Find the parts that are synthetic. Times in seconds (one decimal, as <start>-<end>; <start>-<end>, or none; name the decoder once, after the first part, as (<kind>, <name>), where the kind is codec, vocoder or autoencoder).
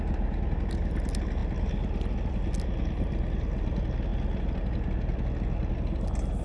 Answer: none